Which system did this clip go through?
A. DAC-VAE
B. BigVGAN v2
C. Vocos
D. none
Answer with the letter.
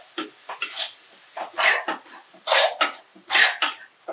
D